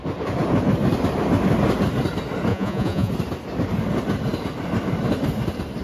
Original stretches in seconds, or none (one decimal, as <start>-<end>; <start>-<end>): 0.0-2.5; 3.1-5.8